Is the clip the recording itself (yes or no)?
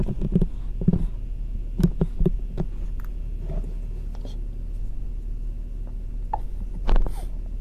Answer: yes